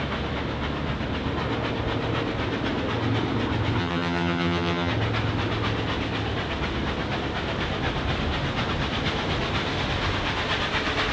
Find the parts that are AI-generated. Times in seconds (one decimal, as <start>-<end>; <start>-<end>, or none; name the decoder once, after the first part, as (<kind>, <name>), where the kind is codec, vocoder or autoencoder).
3.8-4.9 (vocoder, HiFi-GAN)